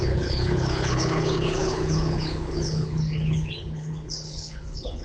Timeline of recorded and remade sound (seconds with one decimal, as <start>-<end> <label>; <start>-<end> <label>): 0.0-5.0 remade